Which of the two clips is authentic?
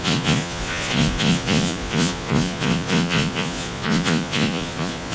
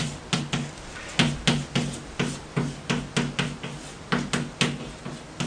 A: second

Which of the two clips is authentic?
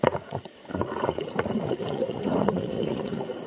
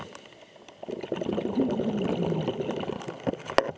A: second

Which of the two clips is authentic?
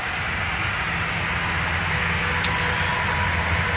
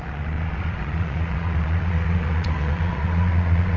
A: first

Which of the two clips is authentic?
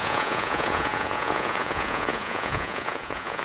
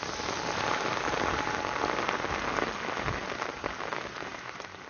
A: second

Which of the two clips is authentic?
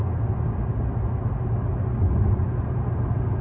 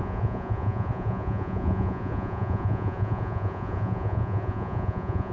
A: first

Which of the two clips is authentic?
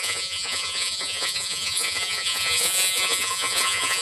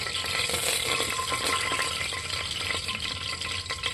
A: second